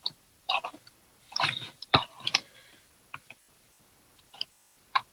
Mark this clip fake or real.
fake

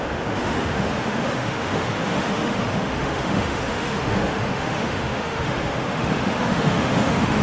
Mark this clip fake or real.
fake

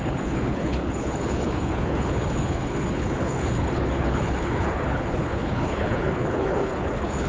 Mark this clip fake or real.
fake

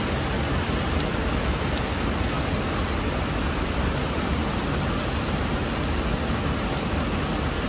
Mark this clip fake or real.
real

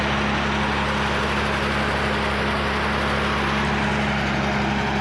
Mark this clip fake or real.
real